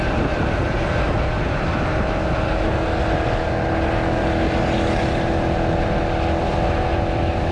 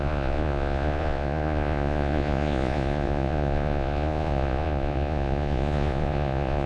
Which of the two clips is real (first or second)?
first